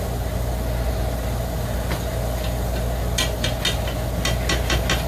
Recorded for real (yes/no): yes